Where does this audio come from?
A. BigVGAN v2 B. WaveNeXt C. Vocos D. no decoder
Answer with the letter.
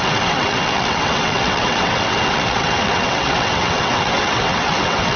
B